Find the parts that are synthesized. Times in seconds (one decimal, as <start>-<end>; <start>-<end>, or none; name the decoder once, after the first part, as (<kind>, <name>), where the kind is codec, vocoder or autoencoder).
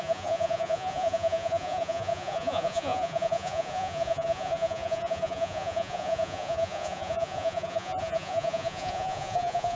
0.0-9.7 (vocoder, Vocos)